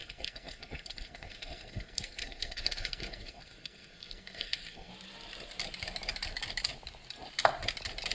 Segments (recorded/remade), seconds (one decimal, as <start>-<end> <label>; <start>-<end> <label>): 0.0-4.9 remade; 4.9-8.1 recorded